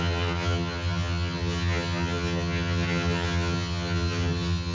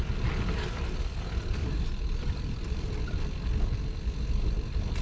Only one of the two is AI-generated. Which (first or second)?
first